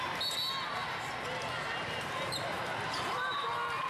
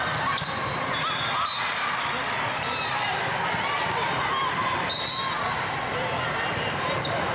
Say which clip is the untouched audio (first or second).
first